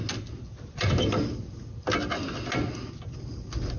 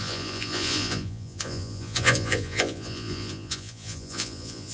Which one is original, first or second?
first